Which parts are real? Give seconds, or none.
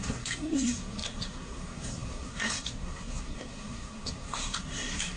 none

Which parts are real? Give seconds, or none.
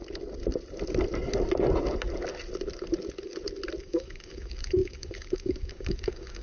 0.0-3.8